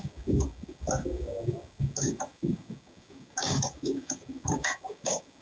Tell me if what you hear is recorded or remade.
remade